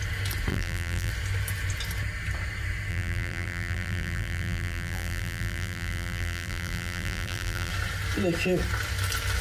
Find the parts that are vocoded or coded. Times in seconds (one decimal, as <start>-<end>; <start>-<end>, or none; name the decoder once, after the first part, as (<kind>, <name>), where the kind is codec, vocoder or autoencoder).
0.5-1.1 (vocoder, BigVGAN v2); 2.9-7.7